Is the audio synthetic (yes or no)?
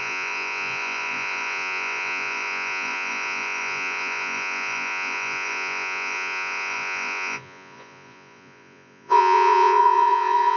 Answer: yes